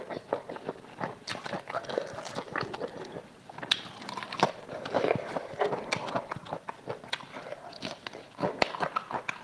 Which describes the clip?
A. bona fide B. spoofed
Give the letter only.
A